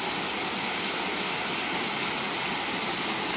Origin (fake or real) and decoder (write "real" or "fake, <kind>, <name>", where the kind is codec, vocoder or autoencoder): real